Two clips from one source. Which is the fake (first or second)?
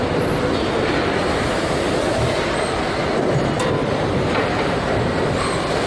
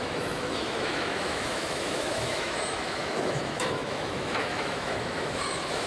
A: second